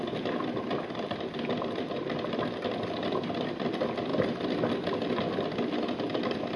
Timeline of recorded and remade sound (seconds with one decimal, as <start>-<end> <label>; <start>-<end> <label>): 0.0-6.6 remade